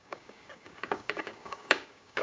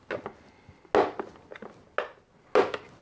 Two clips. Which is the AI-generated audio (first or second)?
first